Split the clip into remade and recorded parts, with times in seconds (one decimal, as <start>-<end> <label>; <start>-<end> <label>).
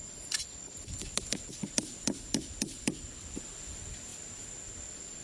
0.0-5.2 recorded